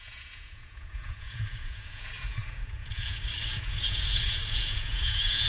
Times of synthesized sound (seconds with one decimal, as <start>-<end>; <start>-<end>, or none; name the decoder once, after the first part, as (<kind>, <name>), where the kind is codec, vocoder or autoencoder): 0.0-5.5 (vocoder, Vocos)